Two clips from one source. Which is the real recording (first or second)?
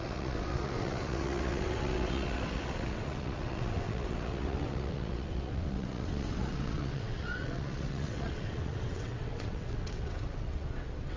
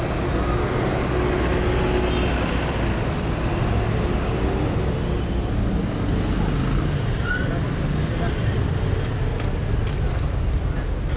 second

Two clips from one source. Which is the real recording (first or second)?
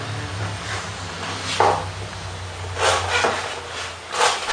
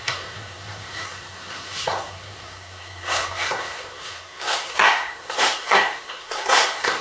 first